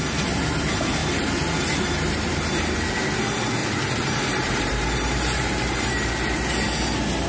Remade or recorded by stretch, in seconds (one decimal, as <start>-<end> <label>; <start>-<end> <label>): 0.0-1.0 recorded; 1.0-3.1 remade; 3.1-3.6 recorded; 3.6-6.1 remade; 6.1-7.3 recorded